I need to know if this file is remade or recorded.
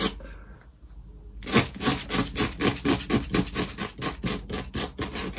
recorded